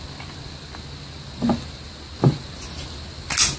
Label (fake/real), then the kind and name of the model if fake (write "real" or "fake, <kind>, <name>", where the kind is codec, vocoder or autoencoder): real